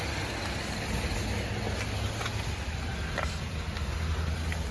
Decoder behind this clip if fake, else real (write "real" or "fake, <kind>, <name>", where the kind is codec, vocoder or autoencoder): real